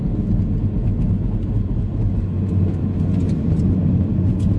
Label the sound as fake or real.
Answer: real